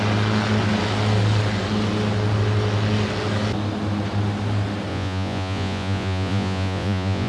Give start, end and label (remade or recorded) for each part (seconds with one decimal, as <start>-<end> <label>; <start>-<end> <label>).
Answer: 0.0-4.9 recorded; 4.9-7.3 remade